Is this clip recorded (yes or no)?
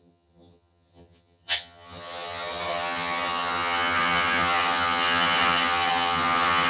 no